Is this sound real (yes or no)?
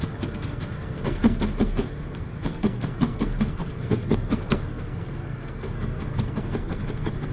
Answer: no